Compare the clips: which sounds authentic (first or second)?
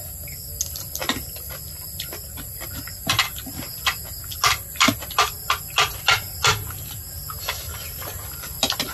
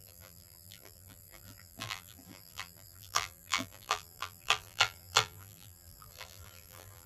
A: first